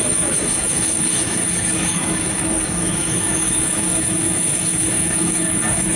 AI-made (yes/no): yes